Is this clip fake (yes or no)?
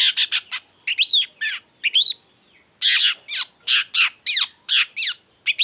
no